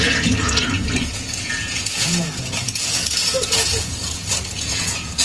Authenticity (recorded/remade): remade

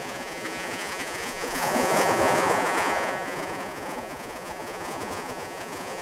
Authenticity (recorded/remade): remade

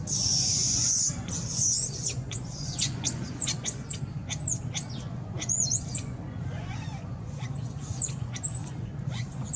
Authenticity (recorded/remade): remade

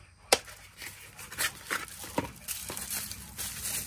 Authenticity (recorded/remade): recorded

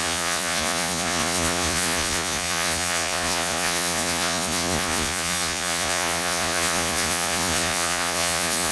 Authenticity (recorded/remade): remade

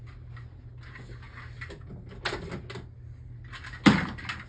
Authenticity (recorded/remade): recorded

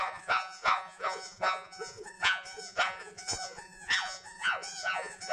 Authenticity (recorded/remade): remade